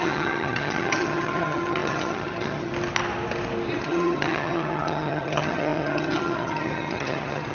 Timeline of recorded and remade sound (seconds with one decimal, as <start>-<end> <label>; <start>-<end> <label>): 0.0-2.7 remade; 2.7-3.8 recorded; 3.8-7.5 remade